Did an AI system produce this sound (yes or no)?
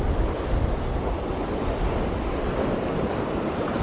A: no